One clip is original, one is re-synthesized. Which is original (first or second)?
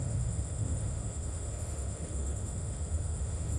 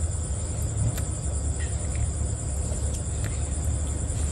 second